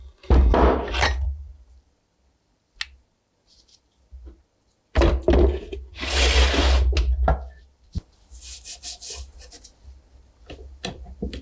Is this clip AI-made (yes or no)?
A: no